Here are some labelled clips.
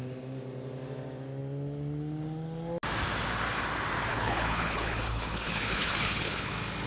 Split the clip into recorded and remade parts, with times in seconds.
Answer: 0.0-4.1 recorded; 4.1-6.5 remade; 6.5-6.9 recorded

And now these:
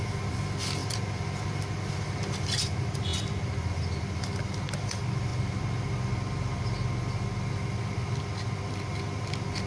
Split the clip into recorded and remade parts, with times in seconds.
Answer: 0.0-9.7 recorded

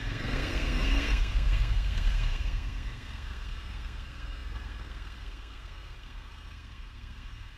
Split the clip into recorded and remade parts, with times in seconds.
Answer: 0.0-7.6 remade

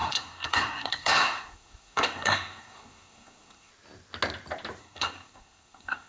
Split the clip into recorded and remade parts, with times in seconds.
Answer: 0.0-3.7 remade; 3.7-4.8 recorded; 4.8-6.1 remade